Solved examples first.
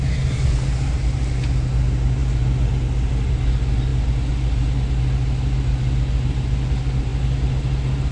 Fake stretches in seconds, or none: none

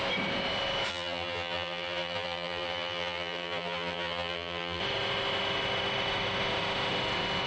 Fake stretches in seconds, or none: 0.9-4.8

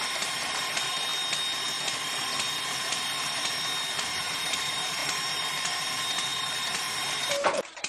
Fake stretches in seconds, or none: 0.0-1.1; 4.0-7.9

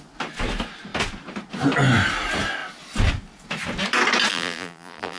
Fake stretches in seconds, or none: 4.3-5.2

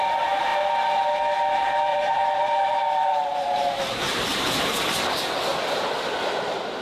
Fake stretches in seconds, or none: 1.9-4.9

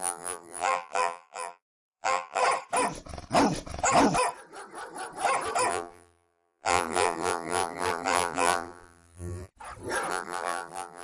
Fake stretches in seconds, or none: 0.0-2.4; 5.7-9.5; 10.1-11.0